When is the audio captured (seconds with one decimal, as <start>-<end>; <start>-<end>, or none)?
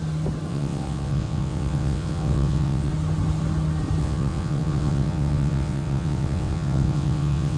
0.0-0.5; 2.9-4.0